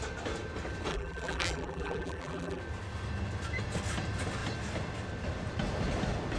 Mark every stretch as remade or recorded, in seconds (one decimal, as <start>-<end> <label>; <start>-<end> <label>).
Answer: 0.0-0.9 recorded; 0.9-2.6 remade; 2.6-6.4 recorded